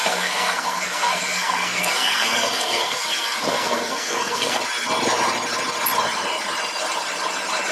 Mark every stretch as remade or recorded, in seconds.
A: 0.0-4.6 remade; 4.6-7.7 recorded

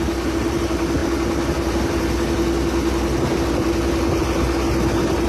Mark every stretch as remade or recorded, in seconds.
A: 0.0-5.3 recorded

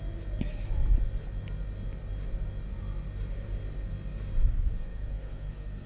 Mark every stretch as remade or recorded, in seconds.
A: 0.0-4.5 recorded; 4.5-5.9 remade

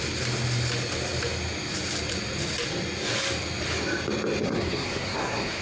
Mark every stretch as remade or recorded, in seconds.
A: 0.0-4.4 recorded; 4.4-5.6 remade